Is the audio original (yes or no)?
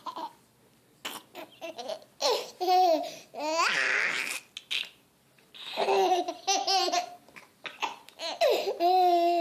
yes